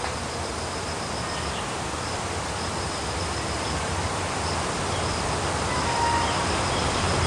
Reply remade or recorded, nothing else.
recorded